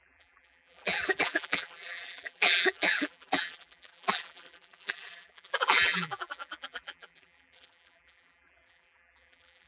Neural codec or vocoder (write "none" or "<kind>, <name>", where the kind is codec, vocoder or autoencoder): vocoder, BigVGAN v2